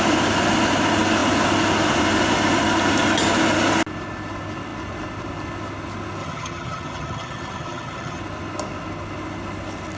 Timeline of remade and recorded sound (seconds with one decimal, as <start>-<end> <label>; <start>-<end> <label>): 0.0-6.2 recorded; 6.2-8.2 remade; 8.2-10.0 recorded